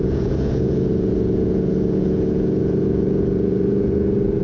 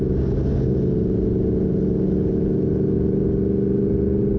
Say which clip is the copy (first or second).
first